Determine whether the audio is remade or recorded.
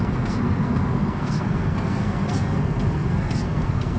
remade